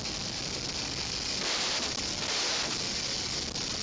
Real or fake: real